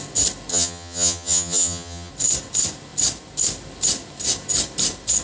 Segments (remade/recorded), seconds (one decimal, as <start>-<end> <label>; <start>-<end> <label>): 0.0-0.5 recorded; 0.5-2.1 remade; 2.1-5.2 recorded